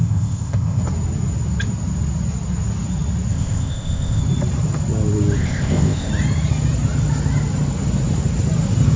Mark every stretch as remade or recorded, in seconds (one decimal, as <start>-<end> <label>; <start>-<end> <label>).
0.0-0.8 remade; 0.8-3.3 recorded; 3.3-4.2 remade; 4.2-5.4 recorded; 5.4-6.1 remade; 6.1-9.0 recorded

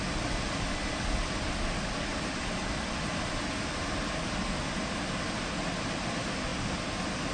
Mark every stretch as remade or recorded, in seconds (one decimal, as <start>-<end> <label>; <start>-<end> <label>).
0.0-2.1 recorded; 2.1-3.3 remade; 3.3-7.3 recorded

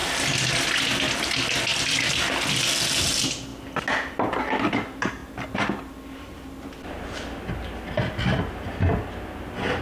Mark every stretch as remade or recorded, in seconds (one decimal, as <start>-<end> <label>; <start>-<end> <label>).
0.0-9.8 recorded

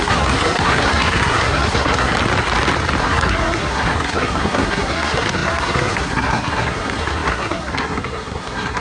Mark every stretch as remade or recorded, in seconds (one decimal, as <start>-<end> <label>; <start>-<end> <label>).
0.0-2.1 remade; 2.1-3.0 recorded; 3.0-8.8 remade

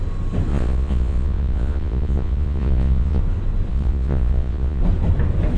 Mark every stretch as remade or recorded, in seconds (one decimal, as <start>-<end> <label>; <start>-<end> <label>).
0.0-0.5 recorded; 0.5-3.2 remade; 3.2-3.7 recorded; 3.7-4.8 remade; 4.8-5.6 recorded